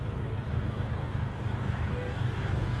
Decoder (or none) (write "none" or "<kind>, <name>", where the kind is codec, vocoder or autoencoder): codec, DAC